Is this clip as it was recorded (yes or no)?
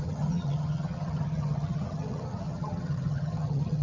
no